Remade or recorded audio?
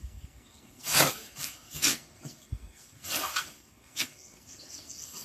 remade